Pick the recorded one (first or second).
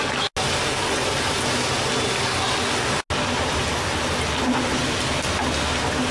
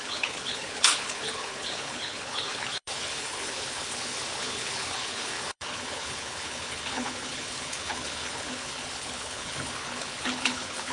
first